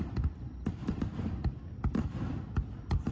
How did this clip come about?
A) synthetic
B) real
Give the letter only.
B